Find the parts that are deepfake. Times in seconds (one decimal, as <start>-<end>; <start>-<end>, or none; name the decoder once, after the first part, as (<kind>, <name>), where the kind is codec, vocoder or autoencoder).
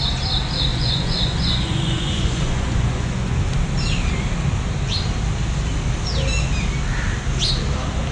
0.7-3.4 (vocoder, Vocos)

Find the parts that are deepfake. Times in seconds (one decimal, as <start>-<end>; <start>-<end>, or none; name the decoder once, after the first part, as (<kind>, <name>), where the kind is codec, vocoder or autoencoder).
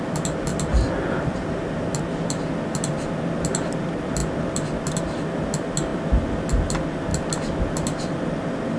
none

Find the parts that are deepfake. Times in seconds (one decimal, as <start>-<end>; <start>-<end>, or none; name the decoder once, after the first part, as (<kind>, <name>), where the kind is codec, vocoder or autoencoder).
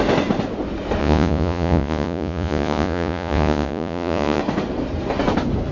1.0-4.4 (vocoder, Vocos)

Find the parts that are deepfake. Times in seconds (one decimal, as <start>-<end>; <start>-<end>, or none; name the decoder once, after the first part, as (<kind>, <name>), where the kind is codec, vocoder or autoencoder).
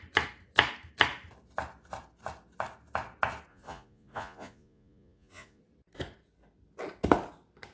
3.5-5.6 (vocoder, Vocos)